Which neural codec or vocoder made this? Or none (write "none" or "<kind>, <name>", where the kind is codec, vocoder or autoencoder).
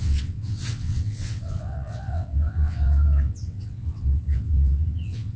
vocoder, WaveNeXt